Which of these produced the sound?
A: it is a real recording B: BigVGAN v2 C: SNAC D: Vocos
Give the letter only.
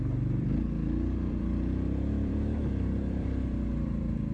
B